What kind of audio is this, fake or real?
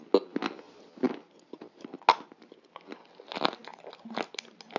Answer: real